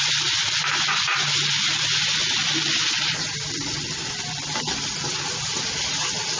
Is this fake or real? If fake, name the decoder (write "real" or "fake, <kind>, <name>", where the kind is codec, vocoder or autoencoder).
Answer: real